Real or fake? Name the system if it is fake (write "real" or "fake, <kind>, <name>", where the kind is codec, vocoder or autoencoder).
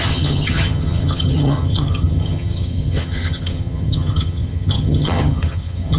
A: fake, vocoder, HiFi-GAN